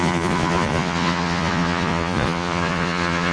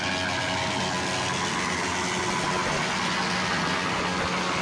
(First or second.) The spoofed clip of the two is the first